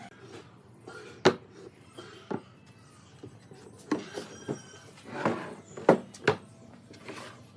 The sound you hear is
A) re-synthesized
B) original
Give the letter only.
B